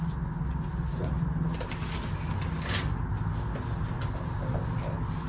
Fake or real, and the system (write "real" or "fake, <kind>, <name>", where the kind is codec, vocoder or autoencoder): real